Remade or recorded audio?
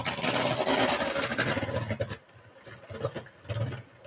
recorded